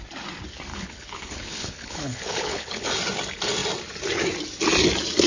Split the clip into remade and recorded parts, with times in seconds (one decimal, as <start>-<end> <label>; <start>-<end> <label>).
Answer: 0.0-0.7 recorded; 0.7-2.9 remade; 2.9-5.3 recorded